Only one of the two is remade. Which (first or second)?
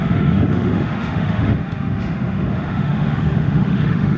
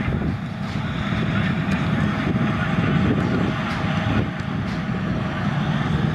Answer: first